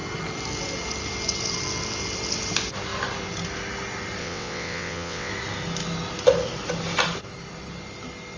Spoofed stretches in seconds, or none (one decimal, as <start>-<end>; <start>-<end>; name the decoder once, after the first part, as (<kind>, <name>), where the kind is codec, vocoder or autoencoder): 4.2-5.3 (vocoder, WaveNeXt)